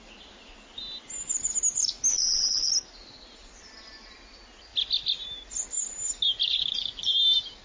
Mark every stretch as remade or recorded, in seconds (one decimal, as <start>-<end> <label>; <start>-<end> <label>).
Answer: 0.0-2.1 recorded; 2.1-2.7 remade; 2.7-7.6 recorded